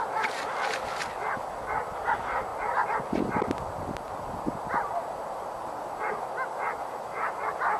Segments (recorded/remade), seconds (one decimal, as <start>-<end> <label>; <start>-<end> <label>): 0.0-7.8 recorded